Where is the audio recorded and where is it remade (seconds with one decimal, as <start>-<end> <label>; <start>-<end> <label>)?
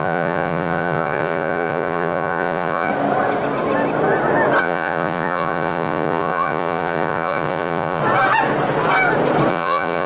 0.0-2.9 remade; 2.9-4.6 recorded; 4.6-8.0 remade; 8.0-9.5 recorded; 9.5-10.1 remade